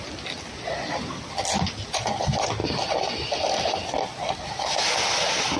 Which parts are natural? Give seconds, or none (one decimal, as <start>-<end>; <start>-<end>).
0.0-5.6

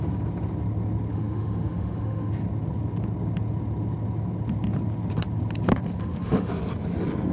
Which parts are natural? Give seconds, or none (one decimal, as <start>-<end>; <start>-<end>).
0.0-1.1; 2.3-6.0; 6.5-7.3

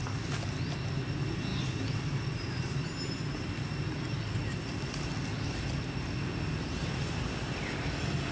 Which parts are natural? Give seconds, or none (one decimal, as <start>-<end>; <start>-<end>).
0.0-8.3

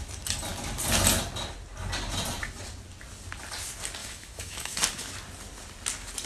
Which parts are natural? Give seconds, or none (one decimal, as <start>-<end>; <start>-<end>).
0.0-4.0; 4.8-6.3

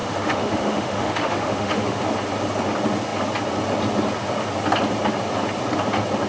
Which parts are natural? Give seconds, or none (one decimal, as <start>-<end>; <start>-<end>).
2.0-6.3

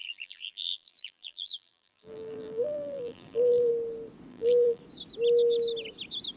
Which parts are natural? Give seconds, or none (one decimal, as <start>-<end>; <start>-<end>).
3.7-4.3; 4.8-6.4

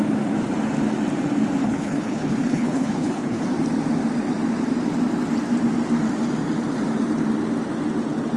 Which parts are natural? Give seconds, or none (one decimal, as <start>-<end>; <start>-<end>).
0.0-1.6; 3.4-8.4